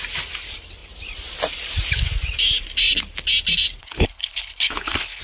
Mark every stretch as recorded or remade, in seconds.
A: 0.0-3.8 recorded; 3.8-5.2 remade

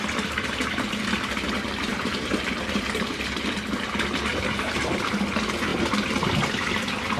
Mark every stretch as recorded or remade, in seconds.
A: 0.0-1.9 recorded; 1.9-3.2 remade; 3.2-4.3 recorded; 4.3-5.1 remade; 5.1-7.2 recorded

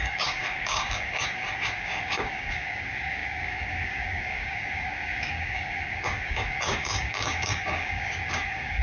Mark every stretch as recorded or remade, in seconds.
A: 0.0-8.8 remade

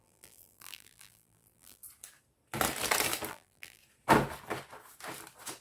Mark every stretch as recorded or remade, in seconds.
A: 0.0-1.8 remade; 1.8-3.3 recorded; 3.3-3.8 remade; 3.8-5.6 recorded